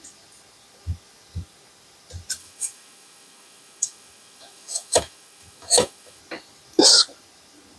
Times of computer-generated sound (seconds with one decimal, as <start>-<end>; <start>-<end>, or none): 2.4-6.2